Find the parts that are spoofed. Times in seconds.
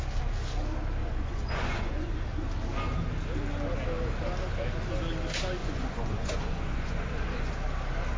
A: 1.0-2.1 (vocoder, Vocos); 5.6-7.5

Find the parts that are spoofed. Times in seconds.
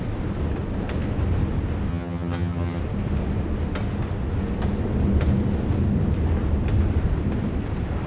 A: 1.9-2.8 (vocoder, HiFi-GAN)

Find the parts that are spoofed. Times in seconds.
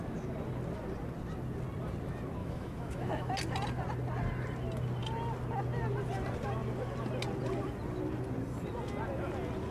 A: 2.4-3.3 (autoencoder, DAC-VAE)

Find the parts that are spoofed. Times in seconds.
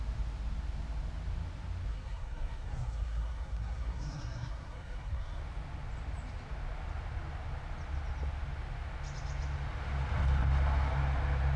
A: 1.9-5.4 (codec, SNAC)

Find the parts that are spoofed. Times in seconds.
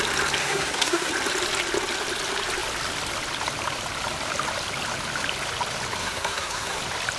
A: 0.4-1.1 (codec, SNAC); 6.0-6.8